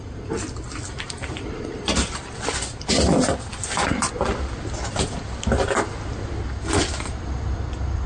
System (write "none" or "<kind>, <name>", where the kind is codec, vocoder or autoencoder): none